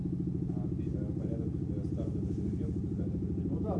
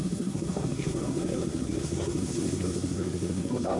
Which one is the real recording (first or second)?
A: first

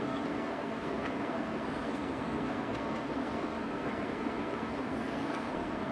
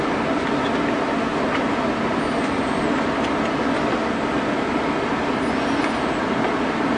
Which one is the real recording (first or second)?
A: second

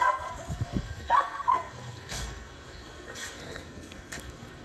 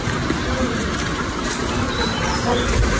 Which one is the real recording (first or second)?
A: second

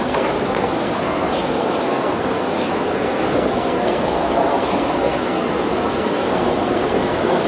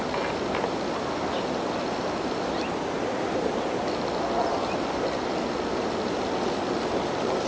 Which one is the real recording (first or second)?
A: second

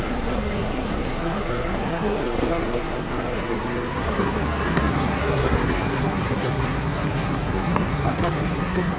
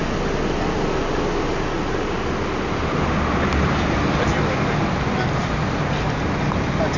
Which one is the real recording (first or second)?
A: second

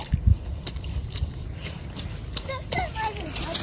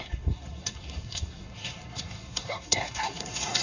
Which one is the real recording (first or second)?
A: first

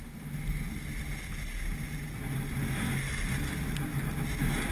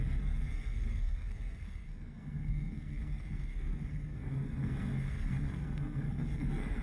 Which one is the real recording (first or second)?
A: first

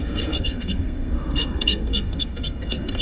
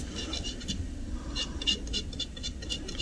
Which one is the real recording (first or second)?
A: second